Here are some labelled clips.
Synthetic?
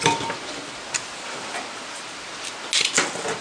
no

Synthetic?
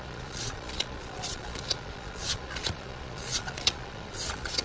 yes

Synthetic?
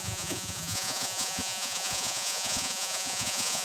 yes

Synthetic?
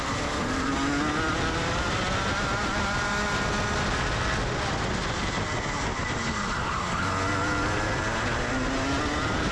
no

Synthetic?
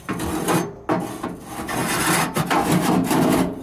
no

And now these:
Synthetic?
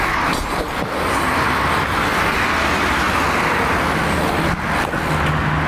no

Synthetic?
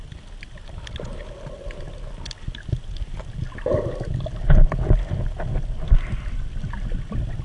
no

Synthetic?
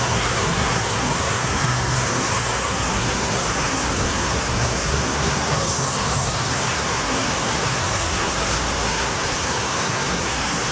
yes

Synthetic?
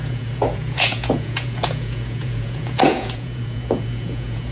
yes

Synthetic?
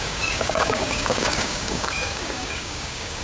yes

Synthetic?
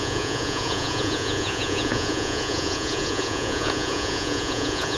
yes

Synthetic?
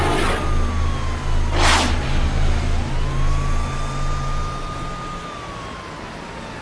no